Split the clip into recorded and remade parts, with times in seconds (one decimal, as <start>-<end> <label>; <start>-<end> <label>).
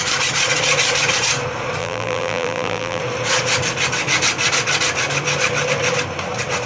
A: 0.0-1.8 recorded; 1.8-3.0 remade; 3.0-6.7 recorded